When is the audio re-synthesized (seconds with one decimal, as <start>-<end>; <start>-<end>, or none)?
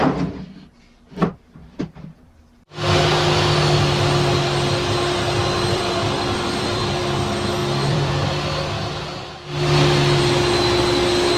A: 1.6-2.4; 5.4-7.0; 7.6-10.2